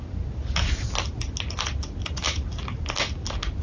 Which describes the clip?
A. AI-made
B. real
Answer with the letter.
B